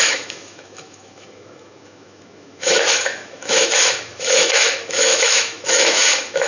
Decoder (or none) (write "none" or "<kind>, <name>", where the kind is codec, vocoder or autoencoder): autoencoder, DAC-VAE